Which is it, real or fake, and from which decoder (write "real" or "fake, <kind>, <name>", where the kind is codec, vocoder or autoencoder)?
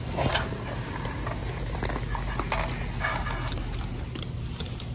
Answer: real